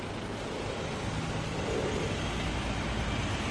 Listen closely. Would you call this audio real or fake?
real